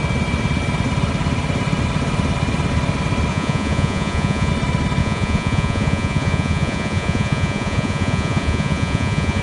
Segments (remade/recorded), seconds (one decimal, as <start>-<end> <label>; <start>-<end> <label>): 0.0-3.3 recorded; 3.3-4.5 remade; 4.5-5.0 recorded; 5.0-9.4 remade